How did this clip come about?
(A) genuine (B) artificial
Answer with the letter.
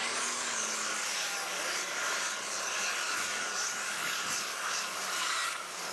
B